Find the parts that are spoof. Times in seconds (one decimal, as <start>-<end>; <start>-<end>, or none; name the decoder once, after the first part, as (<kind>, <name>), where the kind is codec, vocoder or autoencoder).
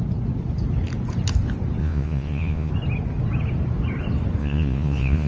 1.8-2.7 (vocoder, Vocos); 4.4-5.3